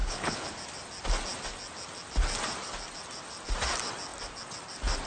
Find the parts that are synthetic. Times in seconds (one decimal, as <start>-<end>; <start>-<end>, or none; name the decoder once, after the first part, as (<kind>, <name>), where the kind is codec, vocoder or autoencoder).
0.0-0.5 (codec, HILCodec)